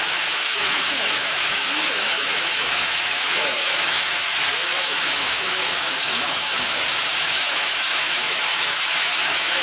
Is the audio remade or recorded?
remade